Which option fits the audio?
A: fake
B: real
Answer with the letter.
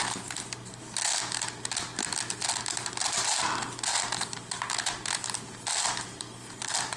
B